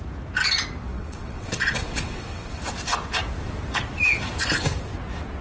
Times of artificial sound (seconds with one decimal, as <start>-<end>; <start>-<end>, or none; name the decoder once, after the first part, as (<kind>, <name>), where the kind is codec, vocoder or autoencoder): 0.9-2.6 (vocoder, WaveNeXt)